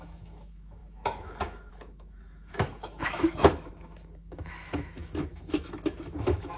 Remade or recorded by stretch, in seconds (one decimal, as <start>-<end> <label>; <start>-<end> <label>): 0.0-6.6 remade